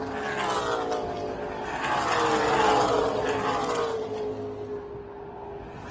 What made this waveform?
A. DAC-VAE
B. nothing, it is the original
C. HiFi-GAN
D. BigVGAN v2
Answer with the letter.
B